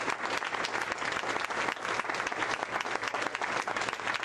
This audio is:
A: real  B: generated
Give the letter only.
A